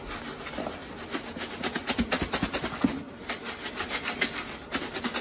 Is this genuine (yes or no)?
yes